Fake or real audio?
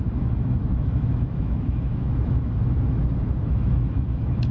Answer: fake